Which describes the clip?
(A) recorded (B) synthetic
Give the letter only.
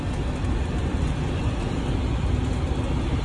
A